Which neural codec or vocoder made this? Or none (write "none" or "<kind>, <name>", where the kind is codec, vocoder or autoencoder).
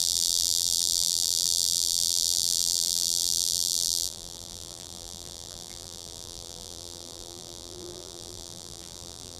vocoder, BigVGAN v2